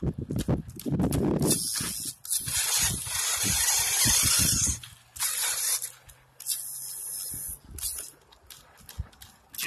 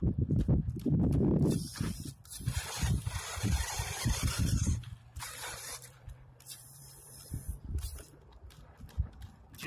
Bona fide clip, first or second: first